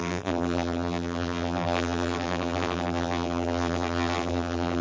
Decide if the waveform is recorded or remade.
remade